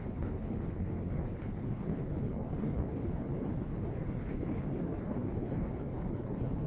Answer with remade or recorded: remade